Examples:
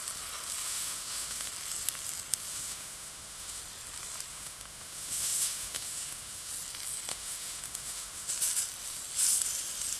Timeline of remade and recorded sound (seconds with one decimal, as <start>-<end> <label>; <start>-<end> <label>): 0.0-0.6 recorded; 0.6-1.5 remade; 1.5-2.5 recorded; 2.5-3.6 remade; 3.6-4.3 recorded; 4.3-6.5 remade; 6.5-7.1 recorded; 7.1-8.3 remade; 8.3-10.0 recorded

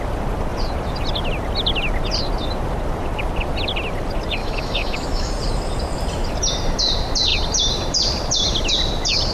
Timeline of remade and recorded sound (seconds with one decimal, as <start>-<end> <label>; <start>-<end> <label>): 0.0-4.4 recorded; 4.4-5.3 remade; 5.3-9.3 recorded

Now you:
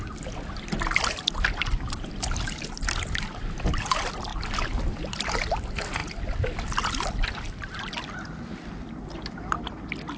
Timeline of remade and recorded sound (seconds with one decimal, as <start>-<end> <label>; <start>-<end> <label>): 0.0-10.2 recorded